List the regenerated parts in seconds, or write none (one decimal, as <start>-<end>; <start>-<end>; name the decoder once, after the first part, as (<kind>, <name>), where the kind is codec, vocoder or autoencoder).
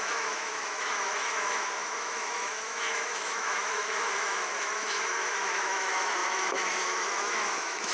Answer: 0.0-7.9 (autoencoder, DAC-VAE)